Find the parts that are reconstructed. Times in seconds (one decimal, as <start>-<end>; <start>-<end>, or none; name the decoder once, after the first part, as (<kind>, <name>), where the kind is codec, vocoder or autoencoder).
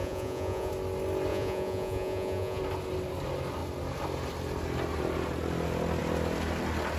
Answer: 0.0-0.7 (vocoder, Vocos); 1.3-2.6